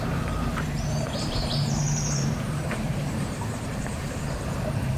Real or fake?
fake